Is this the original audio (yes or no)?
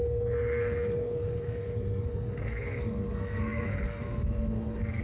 no